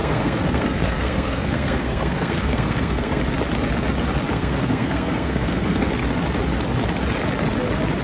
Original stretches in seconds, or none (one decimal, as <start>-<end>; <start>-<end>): 3.2-4.3; 5.9-8.0